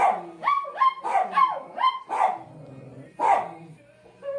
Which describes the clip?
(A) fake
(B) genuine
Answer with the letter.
B